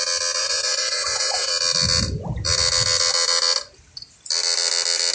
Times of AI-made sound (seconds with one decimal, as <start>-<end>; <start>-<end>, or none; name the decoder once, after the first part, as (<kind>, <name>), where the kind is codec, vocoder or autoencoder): 0.4-1.5 (vocoder, Vocos)